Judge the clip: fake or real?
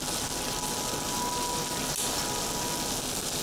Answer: real